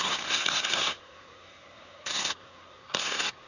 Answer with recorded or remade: remade